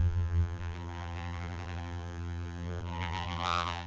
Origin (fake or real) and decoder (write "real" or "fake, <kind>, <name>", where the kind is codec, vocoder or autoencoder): fake, vocoder, BigVGAN v2